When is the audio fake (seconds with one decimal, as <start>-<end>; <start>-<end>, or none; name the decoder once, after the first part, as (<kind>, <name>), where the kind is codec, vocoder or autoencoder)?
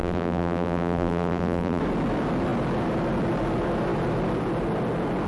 0.0-1.8 (vocoder, BigVGAN v2)